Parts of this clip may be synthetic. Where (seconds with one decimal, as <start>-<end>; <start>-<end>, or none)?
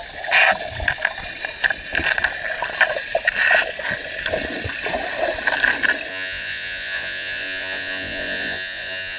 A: 6.1-9.2